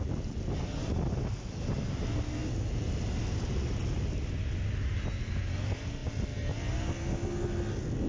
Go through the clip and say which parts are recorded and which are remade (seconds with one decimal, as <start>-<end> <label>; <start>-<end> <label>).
0.0-8.1 recorded